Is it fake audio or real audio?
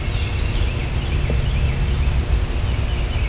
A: real